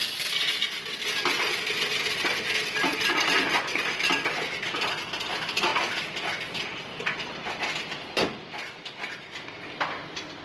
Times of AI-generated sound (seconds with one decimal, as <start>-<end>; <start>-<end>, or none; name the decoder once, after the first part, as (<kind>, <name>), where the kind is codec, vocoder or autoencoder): 2.9-3.9 (vocoder, Vocos)